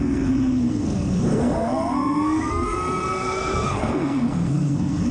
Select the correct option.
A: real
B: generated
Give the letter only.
B